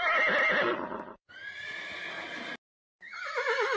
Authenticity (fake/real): real